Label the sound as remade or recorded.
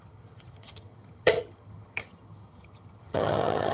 remade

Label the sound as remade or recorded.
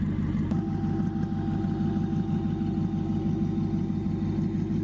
recorded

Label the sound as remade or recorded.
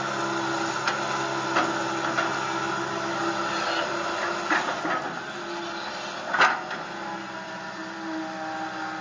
recorded